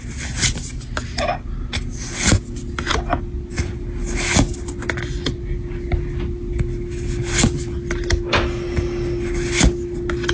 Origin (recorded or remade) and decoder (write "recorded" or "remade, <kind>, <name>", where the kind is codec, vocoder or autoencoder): recorded